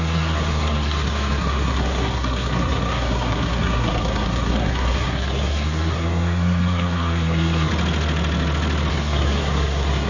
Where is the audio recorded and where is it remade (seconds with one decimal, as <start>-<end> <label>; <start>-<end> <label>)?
0.0-7.7 remade; 7.7-8.9 recorded; 8.9-10.1 remade

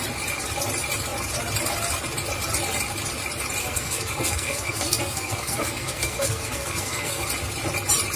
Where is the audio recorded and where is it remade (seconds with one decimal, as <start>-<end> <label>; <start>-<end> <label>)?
0.0-3.6 recorded; 3.6-7.3 remade; 7.3-8.2 recorded

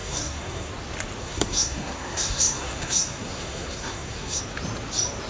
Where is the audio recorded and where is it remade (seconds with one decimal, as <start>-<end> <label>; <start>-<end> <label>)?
0.0-0.7 remade; 0.7-1.2 recorded; 1.2-4.4 remade; 4.4-5.3 recorded

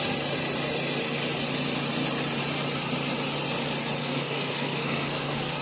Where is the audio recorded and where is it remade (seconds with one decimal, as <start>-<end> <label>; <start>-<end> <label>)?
0.0-4.0 recorded; 4.0-5.6 remade

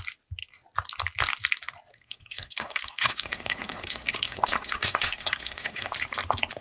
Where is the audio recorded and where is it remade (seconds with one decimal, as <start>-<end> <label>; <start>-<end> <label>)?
0.0-1.9 recorded; 1.9-5.9 remade; 5.9-6.6 recorded

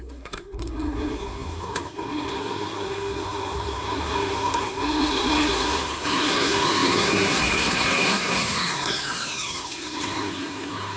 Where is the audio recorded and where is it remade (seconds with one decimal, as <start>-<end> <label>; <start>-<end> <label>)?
0.0-11.0 remade

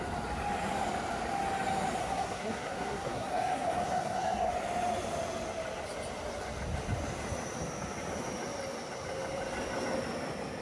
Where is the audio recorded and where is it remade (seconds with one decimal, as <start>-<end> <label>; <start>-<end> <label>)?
0.0-2.0 recorded; 2.0-4.5 remade; 4.5-10.6 recorded